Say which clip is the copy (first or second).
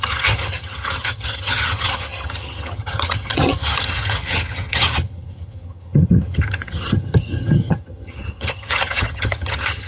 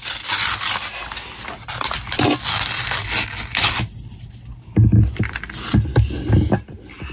first